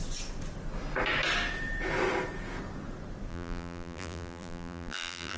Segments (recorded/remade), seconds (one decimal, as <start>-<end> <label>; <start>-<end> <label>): 0.0-3.3 recorded; 3.3-5.4 remade